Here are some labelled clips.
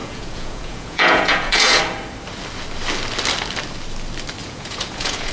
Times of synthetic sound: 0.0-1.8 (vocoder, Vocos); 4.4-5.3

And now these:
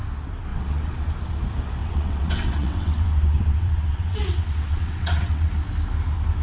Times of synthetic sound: 0.5-1.1 (vocoder, WaveNeXt); 1.8-5.5

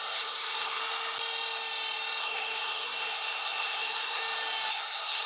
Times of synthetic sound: 0.0-0.8 (codec, SNAC); 2.2-4.2; 4.7-5.3